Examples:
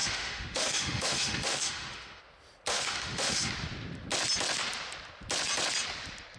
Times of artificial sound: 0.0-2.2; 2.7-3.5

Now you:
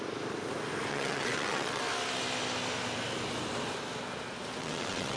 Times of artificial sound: 0.9-1.8; 4.6-5.2

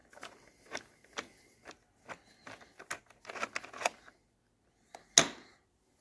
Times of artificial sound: none

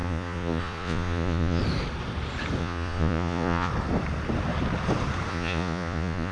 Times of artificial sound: 0.0-1.6; 2.6-3.7; 5.3-6.3

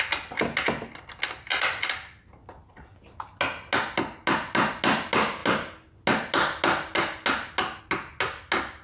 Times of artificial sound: none

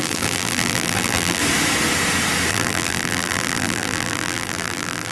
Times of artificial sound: 0.0-1.4; 2.5-5.1